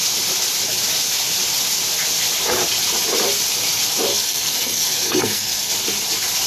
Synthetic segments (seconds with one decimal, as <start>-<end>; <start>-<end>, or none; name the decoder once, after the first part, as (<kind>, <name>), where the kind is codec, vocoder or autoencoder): 4.1-5.7 (codec, SNAC)